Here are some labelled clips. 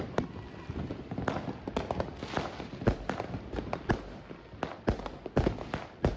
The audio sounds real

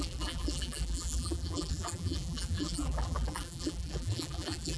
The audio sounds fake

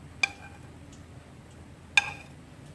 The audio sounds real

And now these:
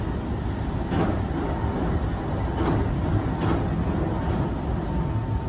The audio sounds real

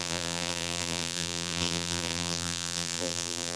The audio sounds fake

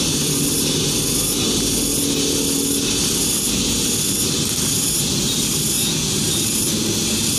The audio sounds real